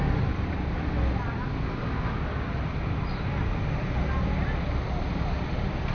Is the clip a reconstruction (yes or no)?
no